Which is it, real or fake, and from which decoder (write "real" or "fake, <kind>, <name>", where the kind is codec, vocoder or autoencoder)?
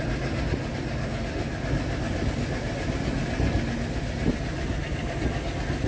real